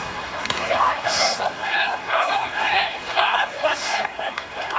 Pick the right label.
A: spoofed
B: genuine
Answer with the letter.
A